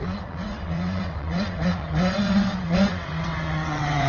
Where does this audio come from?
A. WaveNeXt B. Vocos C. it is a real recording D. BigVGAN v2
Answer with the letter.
A